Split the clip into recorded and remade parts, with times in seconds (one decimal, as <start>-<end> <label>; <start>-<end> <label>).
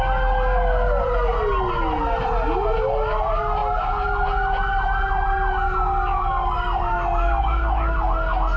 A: 0.0-8.6 recorded